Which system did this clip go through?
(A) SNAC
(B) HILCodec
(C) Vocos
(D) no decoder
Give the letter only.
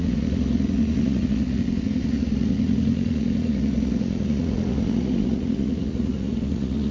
C